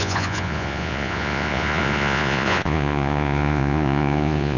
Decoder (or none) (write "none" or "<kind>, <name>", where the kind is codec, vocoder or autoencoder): vocoder, Vocos